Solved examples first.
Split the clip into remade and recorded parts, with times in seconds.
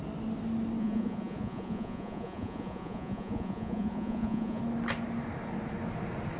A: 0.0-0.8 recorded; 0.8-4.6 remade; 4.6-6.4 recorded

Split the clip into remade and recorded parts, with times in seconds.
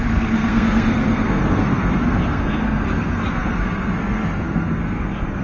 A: 0.0-5.4 remade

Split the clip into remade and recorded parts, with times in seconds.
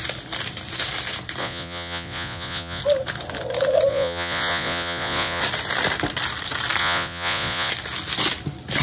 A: 0.0-1.4 recorded; 1.4-2.8 remade; 2.8-3.9 recorded; 3.9-5.4 remade; 5.4-6.8 recorded; 6.8-7.7 remade; 7.7-8.8 recorded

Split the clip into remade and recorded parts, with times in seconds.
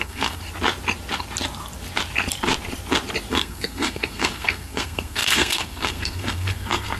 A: 0.0-0.4 remade; 0.4-3.3 recorded; 3.3-7.0 remade